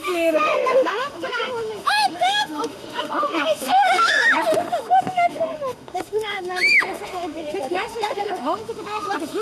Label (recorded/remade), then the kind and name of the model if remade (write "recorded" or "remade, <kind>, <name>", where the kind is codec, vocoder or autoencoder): remade, autoencoder, DAC-VAE